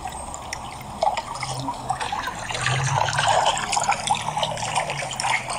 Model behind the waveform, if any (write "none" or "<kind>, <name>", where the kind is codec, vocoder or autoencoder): none